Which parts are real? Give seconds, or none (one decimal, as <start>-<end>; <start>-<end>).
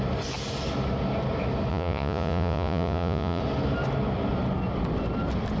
0.0-1.7; 3.4-5.6